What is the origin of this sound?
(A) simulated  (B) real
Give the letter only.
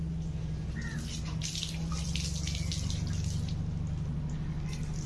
B